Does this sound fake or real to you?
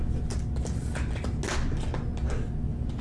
real